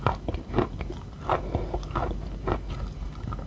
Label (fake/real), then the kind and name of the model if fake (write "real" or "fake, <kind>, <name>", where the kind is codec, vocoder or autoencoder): real